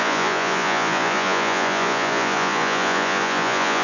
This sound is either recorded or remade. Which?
remade